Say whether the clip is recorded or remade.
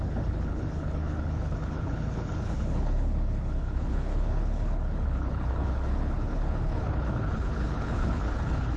remade